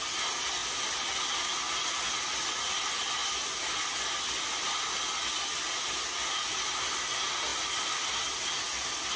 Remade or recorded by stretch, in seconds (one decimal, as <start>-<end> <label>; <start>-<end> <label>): 0.0-0.6 recorded; 0.6-2.0 remade; 2.0-7.5 recorded; 7.5-9.2 remade